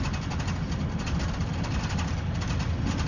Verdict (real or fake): real